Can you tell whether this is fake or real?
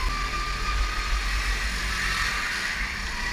real